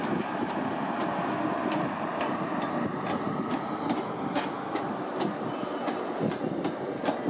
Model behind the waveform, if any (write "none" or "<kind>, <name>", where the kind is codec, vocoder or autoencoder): none